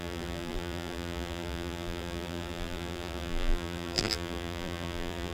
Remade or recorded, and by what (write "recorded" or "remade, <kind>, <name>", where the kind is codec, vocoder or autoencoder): remade, vocoder, BigVGAN v2